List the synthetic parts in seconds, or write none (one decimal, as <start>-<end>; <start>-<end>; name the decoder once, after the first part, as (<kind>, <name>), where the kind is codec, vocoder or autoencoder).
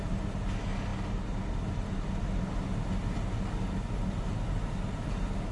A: none